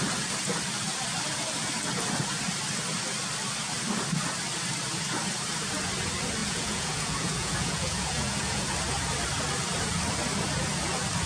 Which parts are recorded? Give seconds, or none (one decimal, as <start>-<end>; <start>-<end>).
0.0-6.4; 8.7-11.3